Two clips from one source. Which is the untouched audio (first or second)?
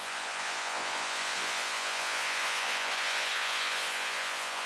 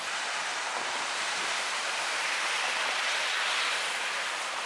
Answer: second